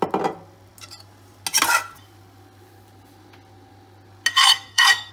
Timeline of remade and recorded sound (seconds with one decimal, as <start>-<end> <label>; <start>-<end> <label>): 0.0-4.3 recorded; 4.3-5.1 remade